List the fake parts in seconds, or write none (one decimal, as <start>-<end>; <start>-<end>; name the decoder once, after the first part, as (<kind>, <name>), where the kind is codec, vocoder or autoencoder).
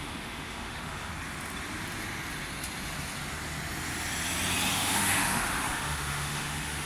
0.0-1.1 (autoencoder, DAC-VAE); 4.7-6.9